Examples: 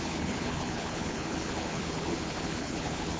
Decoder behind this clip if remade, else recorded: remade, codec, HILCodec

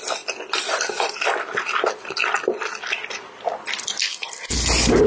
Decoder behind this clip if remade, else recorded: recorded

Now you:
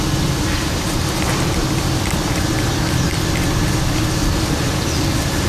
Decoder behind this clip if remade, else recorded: recorded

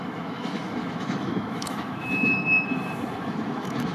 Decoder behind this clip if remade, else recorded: remade, autoencoder, DAC-VAE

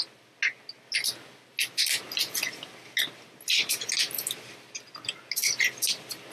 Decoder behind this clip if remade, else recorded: recorded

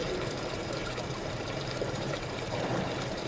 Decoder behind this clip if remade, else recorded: remade, vocoder, BigVGAN v2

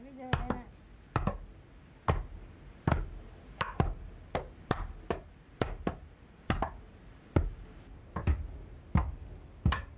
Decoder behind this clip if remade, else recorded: recorded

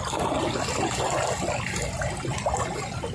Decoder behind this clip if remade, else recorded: recorded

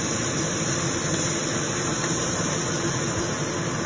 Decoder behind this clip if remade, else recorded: recorded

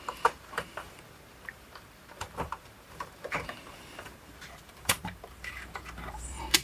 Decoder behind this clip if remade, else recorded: remade, vocoder, BigVGAN v2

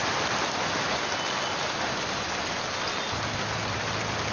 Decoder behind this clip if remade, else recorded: recorded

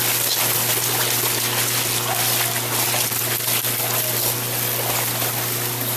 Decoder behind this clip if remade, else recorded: recorded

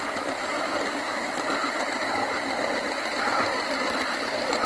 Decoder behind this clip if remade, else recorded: remade, vocoder, BigVGAN v2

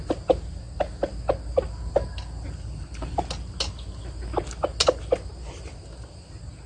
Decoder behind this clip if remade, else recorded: recorded